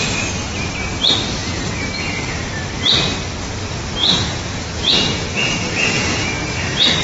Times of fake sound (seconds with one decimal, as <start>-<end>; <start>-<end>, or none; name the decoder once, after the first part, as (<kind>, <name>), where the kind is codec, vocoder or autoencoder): 1.4-2.2 (vocoder, Vocos); 4.0-6.3